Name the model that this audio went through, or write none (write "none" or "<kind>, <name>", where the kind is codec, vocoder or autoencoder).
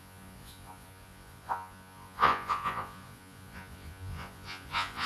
vocoder, Vocos